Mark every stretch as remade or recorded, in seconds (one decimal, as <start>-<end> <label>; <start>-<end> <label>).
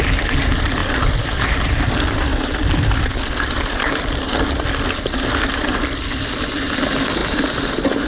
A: 0.0-0.8 recorded; 0.8-1.7 remade; 1.7-2.3 recorded; 2.3-4.4 remade; 4.4-8.1 recorded